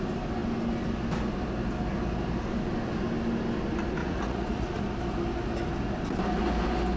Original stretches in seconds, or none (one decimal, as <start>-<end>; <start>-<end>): 0.0-4.0; 4.8-7.0

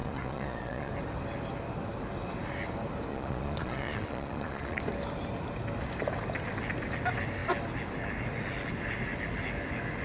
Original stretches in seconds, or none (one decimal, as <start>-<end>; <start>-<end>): 0.9-3.1; 4.8-10.0

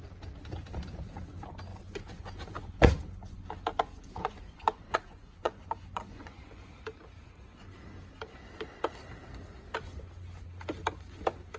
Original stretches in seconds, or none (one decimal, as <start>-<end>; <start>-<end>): 0.0-1.7; 6.8-11.6

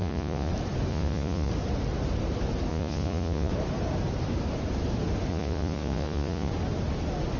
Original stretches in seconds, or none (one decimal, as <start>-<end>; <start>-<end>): 0.5-0.9; 1.5-2.7; 3.5-5.3; 6.5-7.4

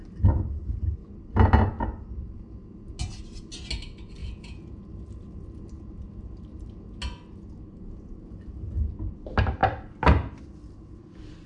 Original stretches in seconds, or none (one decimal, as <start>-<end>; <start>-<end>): 0.0-4.2; 4.8-11.5

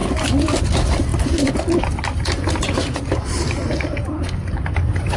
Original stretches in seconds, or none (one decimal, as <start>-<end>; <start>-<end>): 0.0-5.2

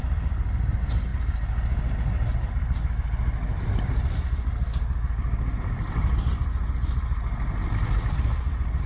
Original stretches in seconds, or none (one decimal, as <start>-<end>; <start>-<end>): 0.0-8.9